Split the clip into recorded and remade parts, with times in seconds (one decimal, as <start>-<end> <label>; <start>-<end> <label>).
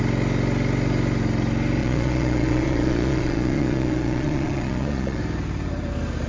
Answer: 0.0-1.8 recorded; 1.8-5.2 remade; 5.2-6.3 recorded